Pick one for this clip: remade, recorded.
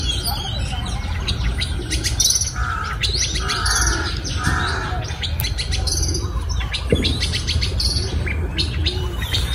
recorded